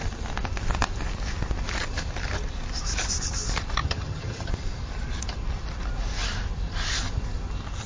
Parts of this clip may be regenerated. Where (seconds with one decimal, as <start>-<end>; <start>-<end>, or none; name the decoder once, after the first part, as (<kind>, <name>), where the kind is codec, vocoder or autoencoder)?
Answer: 3.8-4.5 (vocoder, HiFi-GAN)